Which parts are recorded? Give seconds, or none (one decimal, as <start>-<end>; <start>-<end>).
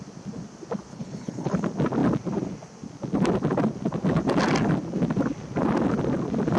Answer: 0.0-0.9; 1.6-6.6